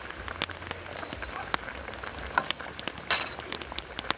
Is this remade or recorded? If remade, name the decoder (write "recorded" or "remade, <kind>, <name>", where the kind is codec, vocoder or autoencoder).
recorded